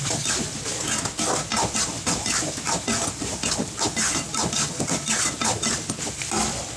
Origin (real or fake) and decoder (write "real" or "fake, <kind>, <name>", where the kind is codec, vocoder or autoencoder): real